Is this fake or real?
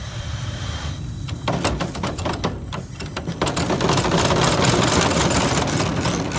fake